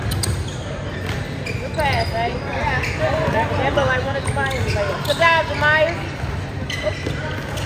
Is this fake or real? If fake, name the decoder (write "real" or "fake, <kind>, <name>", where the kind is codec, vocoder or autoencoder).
real